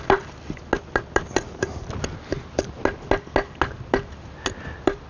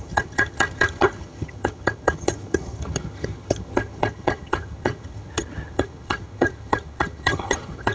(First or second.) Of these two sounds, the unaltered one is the first